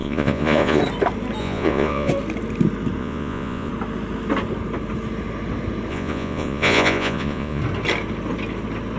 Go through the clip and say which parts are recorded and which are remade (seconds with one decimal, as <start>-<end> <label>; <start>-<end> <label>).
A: 0.0-0.8 remade; 0.8-1.4 recorded; 1.4-2.1 remade; 2.1-3.0 recorded; 3.0-3.7 remade; 3.7-5.9 recorded; 5.9-7.6 remade; 7.6-9.0 recorded